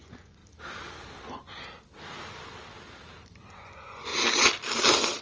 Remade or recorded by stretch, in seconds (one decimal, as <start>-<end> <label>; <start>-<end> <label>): 0.0-0.4 remade; 0.4-3.5 recorded; 3.5-4.1 remade; 4.1-5.2 recorded